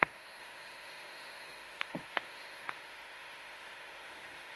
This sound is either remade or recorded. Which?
remade